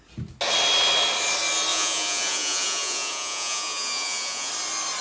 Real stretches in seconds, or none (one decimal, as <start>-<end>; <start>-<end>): 0.0-1.7; 4.5-5.0

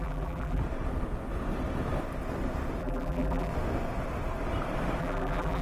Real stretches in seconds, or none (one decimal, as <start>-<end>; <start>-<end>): 0.6-2.8; 3.5-5.0